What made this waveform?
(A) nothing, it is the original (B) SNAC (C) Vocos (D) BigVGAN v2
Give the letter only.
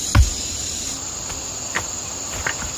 A